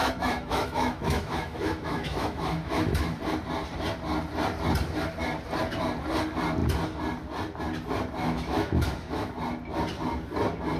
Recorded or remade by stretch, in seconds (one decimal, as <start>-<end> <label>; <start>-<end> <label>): 0.0-3.2 remade; 3.2-8.2 recorded; 8.2-9.3 remade; 9.3-10.8 recorded